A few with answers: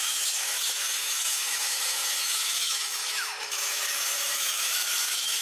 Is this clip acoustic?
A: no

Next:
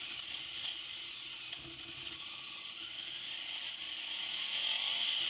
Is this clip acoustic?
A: yes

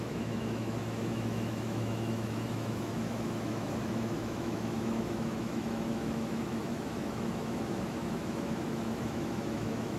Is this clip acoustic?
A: no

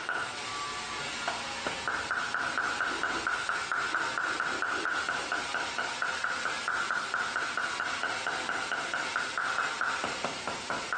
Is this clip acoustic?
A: yes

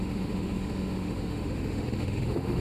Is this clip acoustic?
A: no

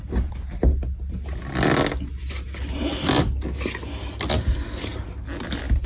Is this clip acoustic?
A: yes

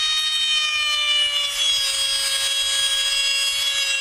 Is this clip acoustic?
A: yes